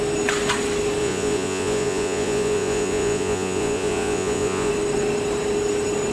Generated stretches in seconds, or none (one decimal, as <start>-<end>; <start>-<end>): 1.0-4.7